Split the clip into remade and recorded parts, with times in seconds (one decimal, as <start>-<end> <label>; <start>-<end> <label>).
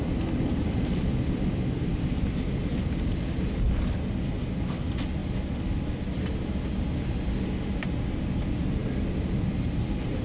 0.0-10.2 recorded